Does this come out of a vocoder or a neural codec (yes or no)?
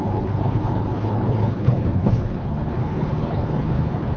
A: yes